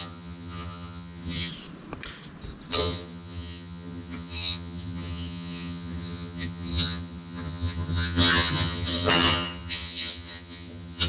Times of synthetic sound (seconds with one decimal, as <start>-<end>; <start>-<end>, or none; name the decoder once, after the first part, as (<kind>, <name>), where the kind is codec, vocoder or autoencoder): 0.0-1.5 (vocoder, HiFi-GAN); 2.7-11.1